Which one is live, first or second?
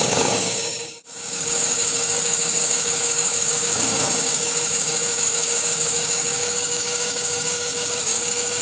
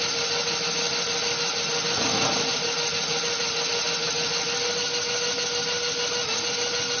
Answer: second